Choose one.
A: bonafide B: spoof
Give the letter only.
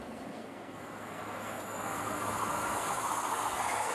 B